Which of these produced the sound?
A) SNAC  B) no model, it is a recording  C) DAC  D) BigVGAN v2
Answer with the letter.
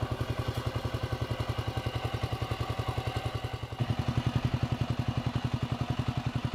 B